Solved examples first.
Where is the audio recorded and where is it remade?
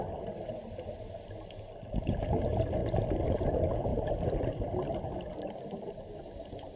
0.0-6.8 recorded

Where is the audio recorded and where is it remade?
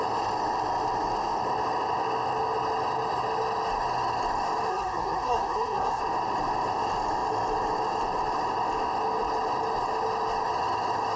0.0-4.7 recorded; 4.7-6.0 remade; 6.0-11.2 recorded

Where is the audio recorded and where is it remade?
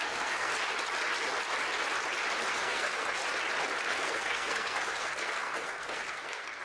0.0-0.5 remade; 0.5-2.5 recorded; 2.5-3.2 remade; 3.2-3.8 recorded; 3.8-6.6 remade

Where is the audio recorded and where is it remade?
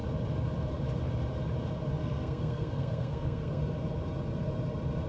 0.0-2.0 recorded; 2.0-3.6 remade; 3.6-5.1 recorded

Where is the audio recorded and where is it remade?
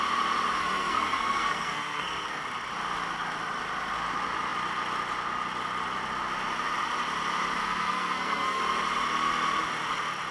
0.0-0.6 recorded; 0.6-2.4 remade; 2.4-7.6 recorded; 7.6-8.6 remade; 8.6-10.3 recorded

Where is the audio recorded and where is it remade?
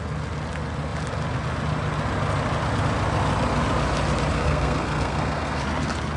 0.0-4.3 recorded; 4.3-5.6 remade; 5.6-6.2 recorded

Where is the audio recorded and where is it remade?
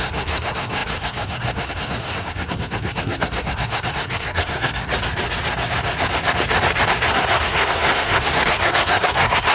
0.0-4.9 remade; 4.9-7.1 recorded; 7.1-9.5 remade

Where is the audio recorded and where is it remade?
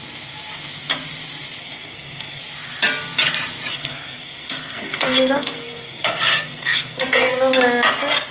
0.0-1.6 recorded; 1.6-2.4 remade; 2.4-3.7 recorded; 3.7-7.3 remade; 7.3-8.3 recorded